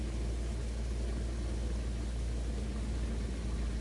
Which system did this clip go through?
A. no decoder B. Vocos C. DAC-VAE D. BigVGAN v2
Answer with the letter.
A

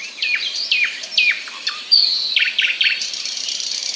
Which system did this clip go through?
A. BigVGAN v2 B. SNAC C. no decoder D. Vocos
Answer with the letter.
A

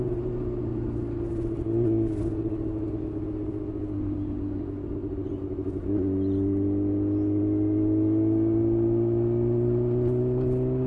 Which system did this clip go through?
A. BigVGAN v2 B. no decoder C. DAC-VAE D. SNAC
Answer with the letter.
B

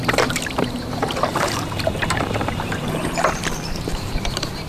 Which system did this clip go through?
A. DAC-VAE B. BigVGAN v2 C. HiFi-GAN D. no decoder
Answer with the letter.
B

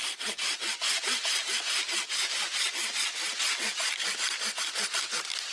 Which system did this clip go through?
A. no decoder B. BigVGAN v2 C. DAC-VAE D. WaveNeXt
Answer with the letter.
A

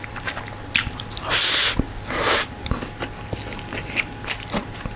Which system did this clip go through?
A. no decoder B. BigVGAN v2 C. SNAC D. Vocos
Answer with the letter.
A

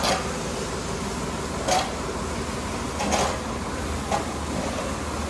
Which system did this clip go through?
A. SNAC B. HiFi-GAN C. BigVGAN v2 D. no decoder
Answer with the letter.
D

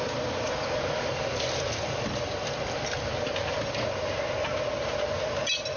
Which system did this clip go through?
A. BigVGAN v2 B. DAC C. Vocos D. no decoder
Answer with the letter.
D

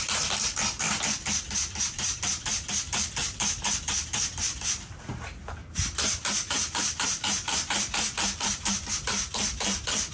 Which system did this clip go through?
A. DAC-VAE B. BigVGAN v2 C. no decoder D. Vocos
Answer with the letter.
B